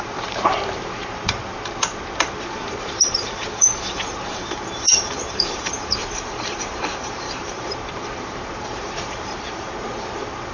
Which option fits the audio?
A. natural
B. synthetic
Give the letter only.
B